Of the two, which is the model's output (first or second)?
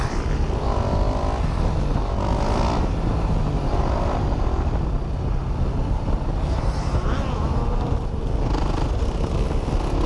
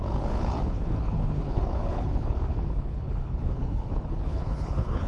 second